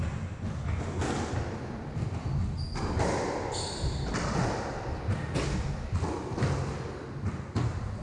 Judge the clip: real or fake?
real